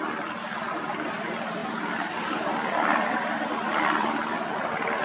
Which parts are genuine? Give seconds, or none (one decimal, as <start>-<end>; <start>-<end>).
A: 0.0-5.0